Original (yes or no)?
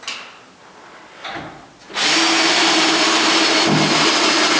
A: yes